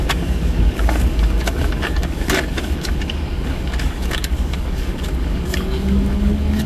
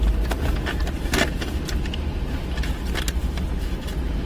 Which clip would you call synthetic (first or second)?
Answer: first